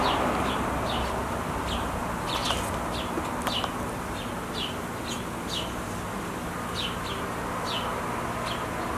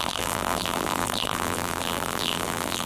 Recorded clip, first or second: first